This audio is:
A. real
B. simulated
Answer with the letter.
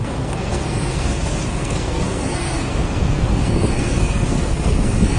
B